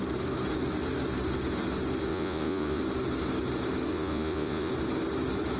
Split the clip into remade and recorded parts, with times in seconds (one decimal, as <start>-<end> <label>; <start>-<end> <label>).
0.0-2.1 recorded; 2.1-2.8 remade; 2.8-3.9 recorded; 3.9-4.7 remade; 4.7-5.6 recorded